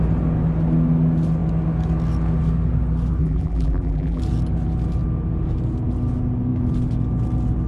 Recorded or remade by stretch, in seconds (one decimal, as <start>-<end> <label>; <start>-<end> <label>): 0.0-3.2 recorded; 3.2-4.2 remade; 4.2-7.7 recorded